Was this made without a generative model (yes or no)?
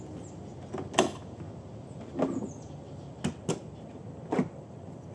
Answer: yes